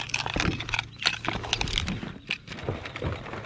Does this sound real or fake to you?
real